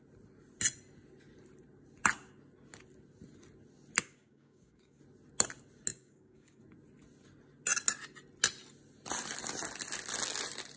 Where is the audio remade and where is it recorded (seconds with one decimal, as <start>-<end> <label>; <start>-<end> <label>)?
0.0-4.0 recorded; 4.0-5.0 remade; 5.0-5.9 recorded; 5.9-6.6 remade; 6.6-10.8 recorded